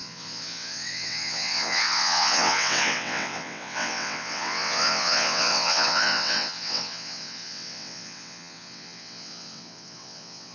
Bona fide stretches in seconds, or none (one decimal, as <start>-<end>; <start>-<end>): none